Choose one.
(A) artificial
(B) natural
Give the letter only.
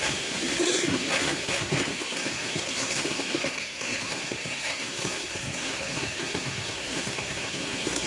A